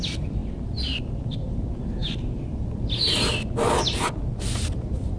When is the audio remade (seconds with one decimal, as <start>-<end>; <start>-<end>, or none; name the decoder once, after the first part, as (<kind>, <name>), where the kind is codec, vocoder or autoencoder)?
none